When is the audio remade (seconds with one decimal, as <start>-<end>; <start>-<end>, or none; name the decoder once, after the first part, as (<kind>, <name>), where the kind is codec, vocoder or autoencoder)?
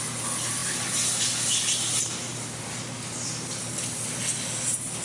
none